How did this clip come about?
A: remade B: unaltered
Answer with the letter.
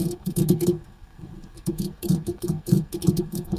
A